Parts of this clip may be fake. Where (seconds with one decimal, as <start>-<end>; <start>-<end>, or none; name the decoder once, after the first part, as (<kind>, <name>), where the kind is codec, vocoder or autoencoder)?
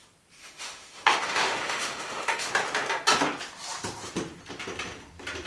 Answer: 0.4-2.5 (autoencoder, DAC-VAE)